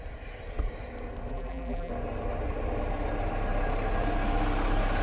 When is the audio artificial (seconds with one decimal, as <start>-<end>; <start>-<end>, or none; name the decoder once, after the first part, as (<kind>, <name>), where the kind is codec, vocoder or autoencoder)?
1.3-1.9 (vocoder, BigVGAN v2)